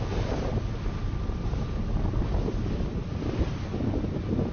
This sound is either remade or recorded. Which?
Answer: recorded